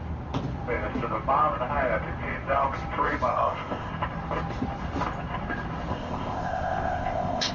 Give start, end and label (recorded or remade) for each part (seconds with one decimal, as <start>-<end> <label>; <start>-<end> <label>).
0.0-3.3 recorded; 3.3-3.9 remade; 3.9-5.9 recorded; 5.9-7.5 remade

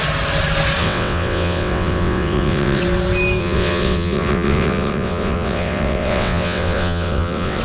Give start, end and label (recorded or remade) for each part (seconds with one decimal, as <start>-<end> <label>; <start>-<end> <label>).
0.0-0.8 recorded; 0.8-2.8 remade; 2.8-3.4 recorded; 3.4-7.6 remade

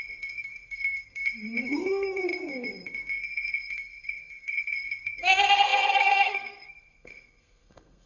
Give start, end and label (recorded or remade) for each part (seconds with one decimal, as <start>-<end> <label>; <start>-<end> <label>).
0.0-8.1 remade

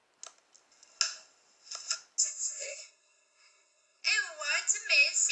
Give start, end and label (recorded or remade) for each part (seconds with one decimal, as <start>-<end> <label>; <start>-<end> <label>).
0.0-2.2 recorded; 2.2-4.0 remade; 4.0-5.3 recorded

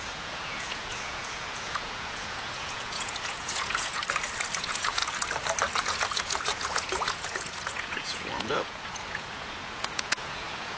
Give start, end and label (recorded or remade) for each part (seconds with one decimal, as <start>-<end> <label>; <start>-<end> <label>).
0.0-4.0 remade; 4.0-4.6 recorded; 4.6-5.0 remade; 5.0-5.8 recorded; 5.8-10.8 remade

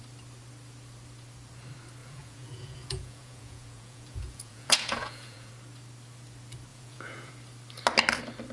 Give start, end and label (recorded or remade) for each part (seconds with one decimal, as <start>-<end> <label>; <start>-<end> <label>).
0.0-2.0 recorded; 2.0-5.5 remade; 5.5-6.7 recorded; 6.7-7.3 remade; 7.3-8.5 recorded

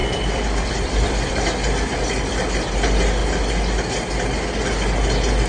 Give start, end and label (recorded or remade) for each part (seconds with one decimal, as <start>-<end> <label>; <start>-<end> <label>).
0.0-1.3 remade; 1.3-5.5 recorded